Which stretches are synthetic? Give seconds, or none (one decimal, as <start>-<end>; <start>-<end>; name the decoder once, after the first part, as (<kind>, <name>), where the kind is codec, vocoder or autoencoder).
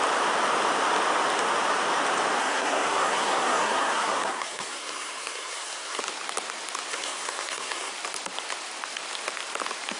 2.4-6.0 (codec, SNAC); 6.9-7.9